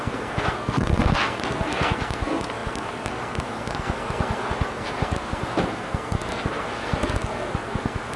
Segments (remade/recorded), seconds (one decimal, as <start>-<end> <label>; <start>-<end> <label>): 0.0-8.2 remade